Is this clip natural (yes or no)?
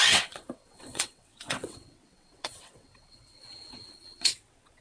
no